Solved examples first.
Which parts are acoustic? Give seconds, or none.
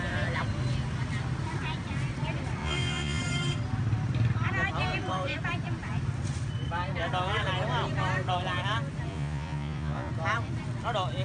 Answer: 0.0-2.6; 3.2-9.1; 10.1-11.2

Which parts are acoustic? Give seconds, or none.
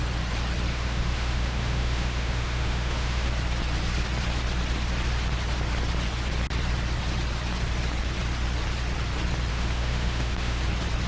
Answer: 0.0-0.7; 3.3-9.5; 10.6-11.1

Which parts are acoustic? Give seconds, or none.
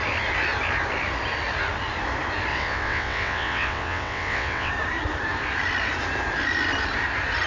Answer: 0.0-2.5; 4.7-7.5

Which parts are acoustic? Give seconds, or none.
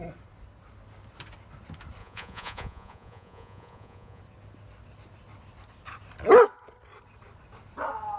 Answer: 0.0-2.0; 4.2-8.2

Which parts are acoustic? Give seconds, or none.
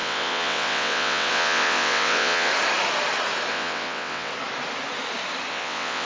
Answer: 2.5-3.5; 4.3-5.5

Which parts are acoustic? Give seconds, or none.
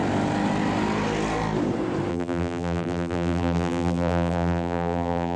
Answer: 0.0-2.1